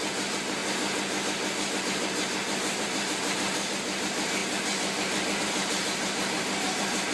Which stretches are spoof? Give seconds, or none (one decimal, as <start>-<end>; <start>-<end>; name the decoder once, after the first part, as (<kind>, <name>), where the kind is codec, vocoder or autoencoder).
0.0-0.6 (vocoder, BigVGAN v2); 1.8-4.4; 5.4-7.1